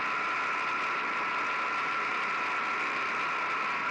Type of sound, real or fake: real